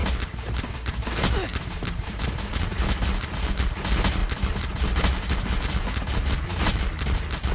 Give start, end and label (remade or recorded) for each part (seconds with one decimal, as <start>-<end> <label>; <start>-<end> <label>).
0.0-1.0 remade; 1.0-1.5 recorded; 1.5-2.7 remade; 2.7-4.2 recorded; 4.2-5.6 remade; 5.6-7.5 recorded